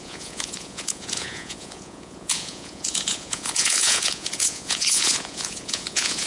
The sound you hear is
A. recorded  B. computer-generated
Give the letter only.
B